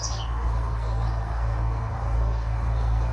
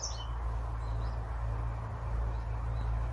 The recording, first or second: second